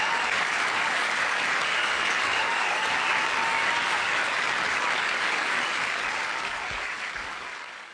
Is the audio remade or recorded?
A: remade